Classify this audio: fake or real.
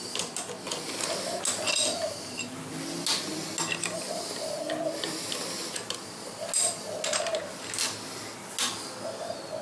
real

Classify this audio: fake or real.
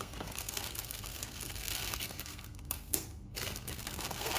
fake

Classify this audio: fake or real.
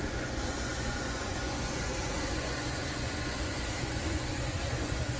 fake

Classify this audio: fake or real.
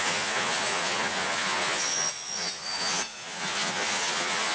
fake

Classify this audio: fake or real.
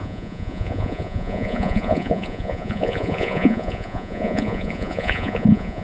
fake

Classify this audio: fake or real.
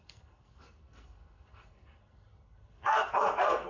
fake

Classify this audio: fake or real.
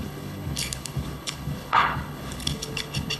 fake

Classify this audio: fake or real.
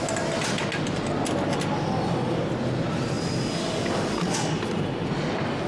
real